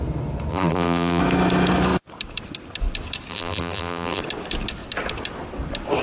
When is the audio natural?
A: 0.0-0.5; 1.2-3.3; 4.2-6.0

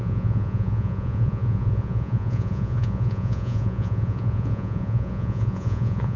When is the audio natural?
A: none

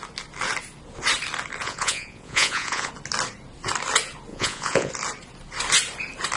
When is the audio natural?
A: 0.0-1.6; 2.9-4.3; 4.9-6.4

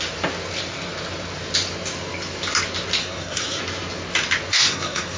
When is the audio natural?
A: 0.0-3.0; 3.6-4.5

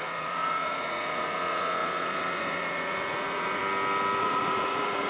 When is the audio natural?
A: 3.6-4.2

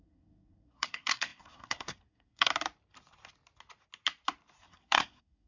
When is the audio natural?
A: 2.5-4.6